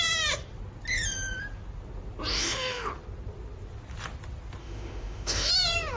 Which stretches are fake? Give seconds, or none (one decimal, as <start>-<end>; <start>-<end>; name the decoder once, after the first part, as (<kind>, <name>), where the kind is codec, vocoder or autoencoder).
2.3-2.9 (autoencoder, DAC-VAE); 4.6-5.5